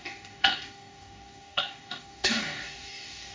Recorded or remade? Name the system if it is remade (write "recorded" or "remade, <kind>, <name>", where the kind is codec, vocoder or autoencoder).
remade, codec, DAC